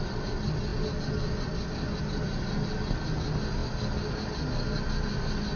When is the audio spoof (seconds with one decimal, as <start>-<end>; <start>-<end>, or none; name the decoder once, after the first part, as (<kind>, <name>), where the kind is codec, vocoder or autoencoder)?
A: none